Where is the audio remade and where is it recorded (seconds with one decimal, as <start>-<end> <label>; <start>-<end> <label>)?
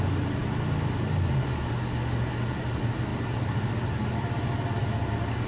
0.0-5.5 recorded